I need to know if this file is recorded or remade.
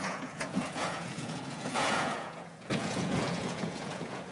remade